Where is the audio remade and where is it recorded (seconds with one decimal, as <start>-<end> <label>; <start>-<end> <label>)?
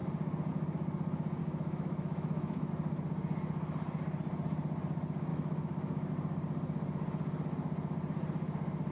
0.0-1.4 recorded; 1.4-2.7 remade; 2.7-5.3 recorded; 5.3-6.1 remade; 6.1-8.9 recorded